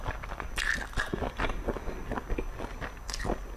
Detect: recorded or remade recorded